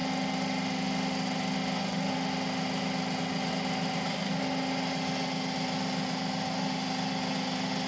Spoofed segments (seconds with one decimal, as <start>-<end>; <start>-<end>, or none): none

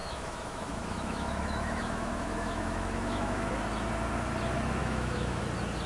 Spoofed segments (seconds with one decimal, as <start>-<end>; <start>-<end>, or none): 0.0-3.5; 4.8-5.4